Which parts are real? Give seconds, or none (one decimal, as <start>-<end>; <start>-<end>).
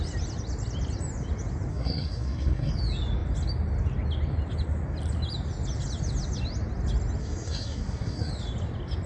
0.0-1.7; 2.7-7.2; 8.3-9.1